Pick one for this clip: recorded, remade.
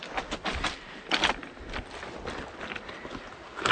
recorded